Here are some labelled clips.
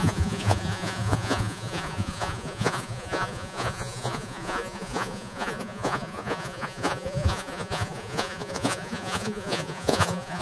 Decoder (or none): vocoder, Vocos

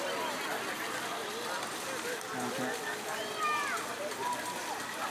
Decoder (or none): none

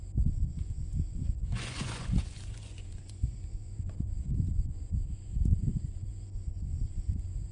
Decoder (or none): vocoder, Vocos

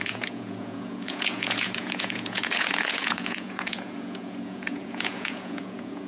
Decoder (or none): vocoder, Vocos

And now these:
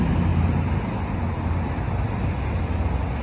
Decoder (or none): none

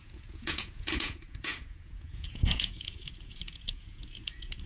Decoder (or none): vocoder, Vocos